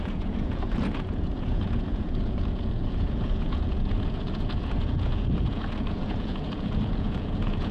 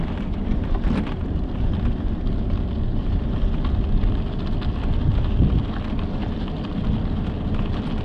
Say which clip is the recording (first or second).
second